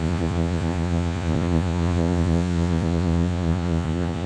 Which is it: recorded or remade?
remade